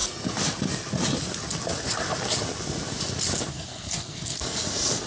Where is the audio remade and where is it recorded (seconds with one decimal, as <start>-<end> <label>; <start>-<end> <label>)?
0.0-3.5 recorded; 3.5-4.4 remade; 4.4-5.1 recorded

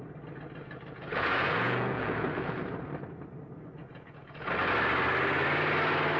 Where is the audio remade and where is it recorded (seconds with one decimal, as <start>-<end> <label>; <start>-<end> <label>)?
0.0-0.6 recorded; 0.6-2.6 remade; 2.6-3.8 recorded; 3.8-4.5 remade; 4.5-6.2 recorded

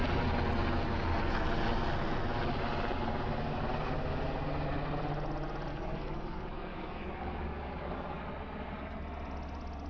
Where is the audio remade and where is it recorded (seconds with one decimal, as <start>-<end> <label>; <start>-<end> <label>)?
0.0-5.7 recorded; 5.7-8.2 remade; 8.2-9.9 recorded

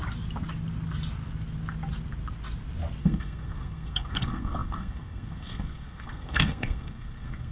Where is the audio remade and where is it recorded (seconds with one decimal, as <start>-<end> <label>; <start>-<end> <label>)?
0.0-3.0 recorded; 3.0-7.5 remade